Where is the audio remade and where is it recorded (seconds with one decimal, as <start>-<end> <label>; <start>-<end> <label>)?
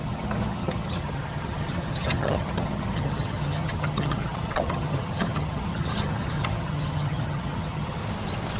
0.0-8.0 remade; 8.0-8.6 recorded